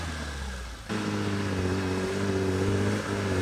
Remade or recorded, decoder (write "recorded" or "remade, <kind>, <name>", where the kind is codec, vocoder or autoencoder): recorded